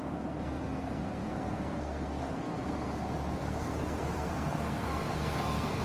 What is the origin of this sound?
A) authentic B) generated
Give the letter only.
B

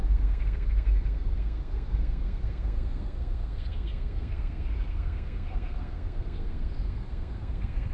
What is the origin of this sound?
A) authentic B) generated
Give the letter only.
B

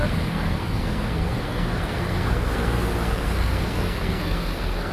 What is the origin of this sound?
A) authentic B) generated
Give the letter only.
B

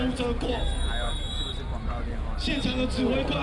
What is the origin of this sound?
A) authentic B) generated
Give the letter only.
A